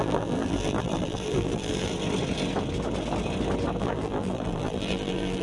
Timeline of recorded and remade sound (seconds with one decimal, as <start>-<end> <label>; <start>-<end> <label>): 0.0-1.9 remade; 1.9-3.8 recorded; 3.8-5.4 remade